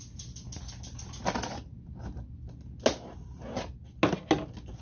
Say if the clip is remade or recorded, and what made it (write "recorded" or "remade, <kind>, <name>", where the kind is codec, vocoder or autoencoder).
recorded